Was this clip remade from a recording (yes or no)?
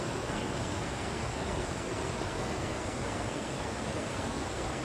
yes